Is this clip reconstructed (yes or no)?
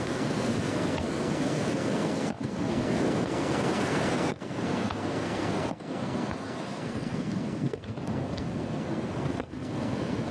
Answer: yes